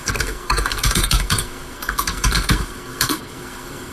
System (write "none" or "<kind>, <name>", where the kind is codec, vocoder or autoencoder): codec, SNAC